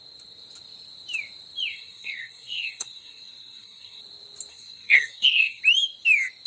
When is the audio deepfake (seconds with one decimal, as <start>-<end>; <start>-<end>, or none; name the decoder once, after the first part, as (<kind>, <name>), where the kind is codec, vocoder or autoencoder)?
1.7-4.0 (codec, SNAC); 4.5-5.6